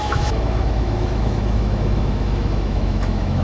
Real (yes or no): no